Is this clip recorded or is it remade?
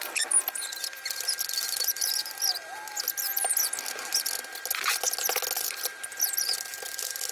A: recorded